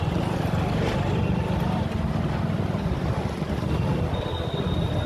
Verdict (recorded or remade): recorded